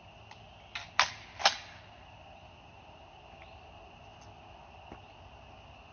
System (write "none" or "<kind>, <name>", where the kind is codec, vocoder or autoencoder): none